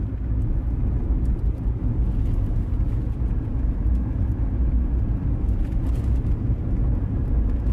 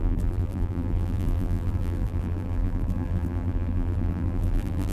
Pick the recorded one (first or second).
first